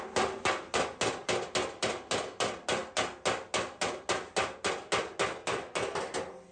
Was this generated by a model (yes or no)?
no